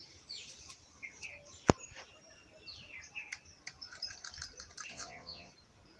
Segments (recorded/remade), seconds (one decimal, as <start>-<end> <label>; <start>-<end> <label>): 0.0-4.9 recorded; 4.9-5.5 remade; 5.5-6.0 recorded